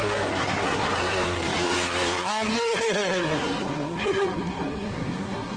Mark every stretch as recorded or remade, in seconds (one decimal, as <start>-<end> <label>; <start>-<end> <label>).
0.0-5.6 remade